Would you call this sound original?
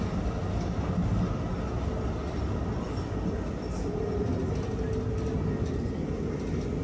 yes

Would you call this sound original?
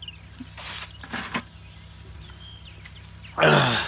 yes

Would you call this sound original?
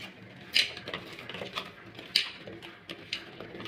yes